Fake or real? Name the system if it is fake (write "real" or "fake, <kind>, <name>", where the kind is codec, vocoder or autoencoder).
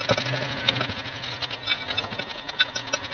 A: real